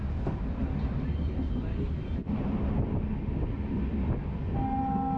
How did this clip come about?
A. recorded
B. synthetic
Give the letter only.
A